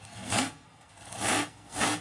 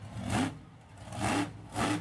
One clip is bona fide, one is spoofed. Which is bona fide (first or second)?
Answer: second